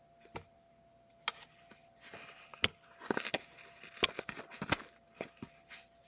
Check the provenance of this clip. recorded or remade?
recorded